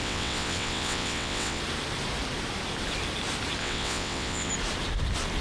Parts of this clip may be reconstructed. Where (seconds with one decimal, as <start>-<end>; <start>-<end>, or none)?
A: 0.0-1.6; 3.6-4.5